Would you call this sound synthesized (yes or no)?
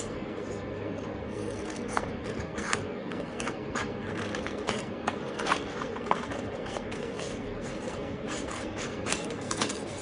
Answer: yes